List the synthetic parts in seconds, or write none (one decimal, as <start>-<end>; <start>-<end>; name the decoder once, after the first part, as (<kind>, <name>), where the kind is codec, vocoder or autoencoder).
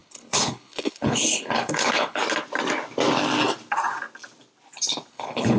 0.0-2.2 (codec, HILCodec); 5.1-5.6